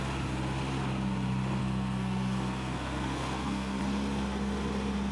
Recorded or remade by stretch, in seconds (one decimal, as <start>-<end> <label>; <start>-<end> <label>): 0.0-1.6 recorded; 1.6-3.8 remade; 3.8-5.1 recorded